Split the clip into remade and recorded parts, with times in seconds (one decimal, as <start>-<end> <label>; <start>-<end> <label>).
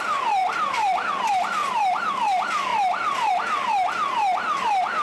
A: 0.0-0.4 recorded; 0.4-1.1 remade; 1.1-1.6 recorded; 1.6-2.1 remade; 2.1-5.0 recorded